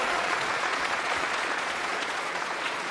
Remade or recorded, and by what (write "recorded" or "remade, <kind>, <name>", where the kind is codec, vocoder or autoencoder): remade, vocoder, Vocos